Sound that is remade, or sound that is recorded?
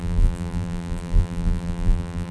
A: remade